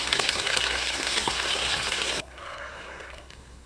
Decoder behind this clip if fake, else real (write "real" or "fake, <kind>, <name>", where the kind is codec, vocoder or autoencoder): fake, codec, SNAC